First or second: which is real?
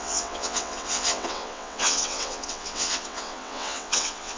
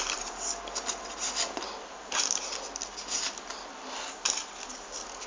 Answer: second